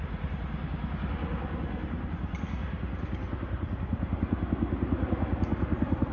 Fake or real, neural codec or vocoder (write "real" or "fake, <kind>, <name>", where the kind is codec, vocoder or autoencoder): real